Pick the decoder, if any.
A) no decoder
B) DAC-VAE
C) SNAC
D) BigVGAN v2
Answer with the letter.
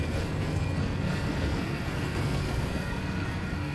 C